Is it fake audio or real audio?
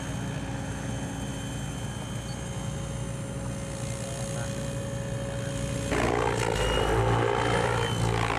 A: real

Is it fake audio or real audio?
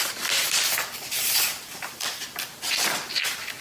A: fake